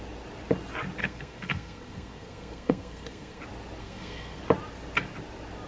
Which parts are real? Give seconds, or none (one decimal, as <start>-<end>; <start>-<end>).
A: 0.0-1.0; 3.4-3.8; 4.4-5.7